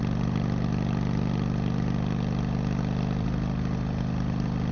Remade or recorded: recorded